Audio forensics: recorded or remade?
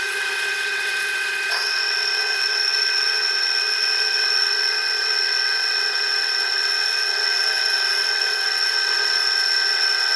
remade